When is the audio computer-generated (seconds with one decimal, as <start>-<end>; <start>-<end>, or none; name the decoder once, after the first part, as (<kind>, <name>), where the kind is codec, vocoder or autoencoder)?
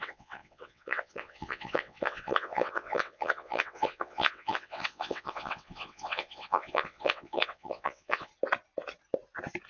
0.0-8.3 (vocoder, WaveNeXt)